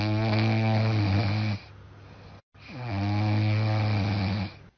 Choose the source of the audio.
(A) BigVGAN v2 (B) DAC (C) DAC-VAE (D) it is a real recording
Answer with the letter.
D